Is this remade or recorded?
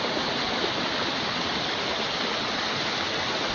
recorded